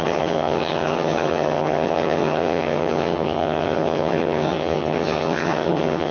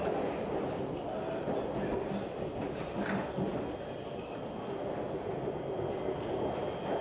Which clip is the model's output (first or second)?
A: first